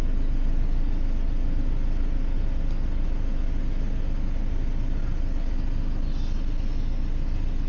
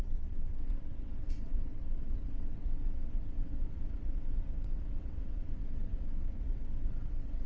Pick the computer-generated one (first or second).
second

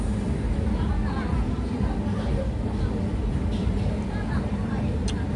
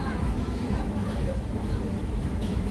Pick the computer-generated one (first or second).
second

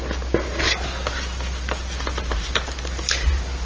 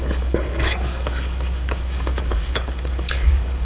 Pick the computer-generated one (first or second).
second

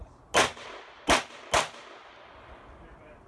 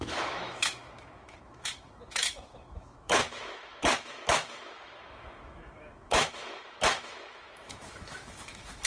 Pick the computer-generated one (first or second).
second